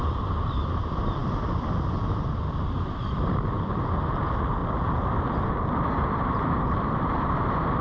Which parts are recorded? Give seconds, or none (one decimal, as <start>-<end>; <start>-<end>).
0.0-4.6; 7.3-7.8